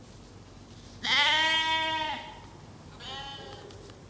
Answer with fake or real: real